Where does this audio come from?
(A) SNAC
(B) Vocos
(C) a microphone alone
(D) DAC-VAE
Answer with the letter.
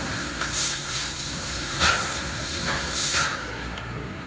A